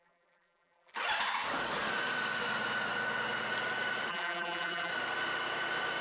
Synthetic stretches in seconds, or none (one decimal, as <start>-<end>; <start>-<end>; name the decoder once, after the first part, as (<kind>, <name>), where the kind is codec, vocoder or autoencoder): 0.0-0.9 (vocoder, BigVGAN v2); 4.1-4.9